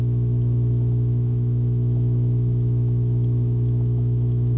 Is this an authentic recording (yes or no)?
no